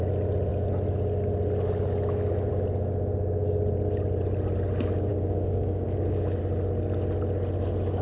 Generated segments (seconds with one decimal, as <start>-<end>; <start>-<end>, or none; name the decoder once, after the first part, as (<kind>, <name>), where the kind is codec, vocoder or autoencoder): 5.1-6.4 (codec, DAC)